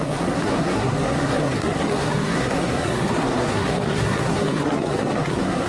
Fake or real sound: fake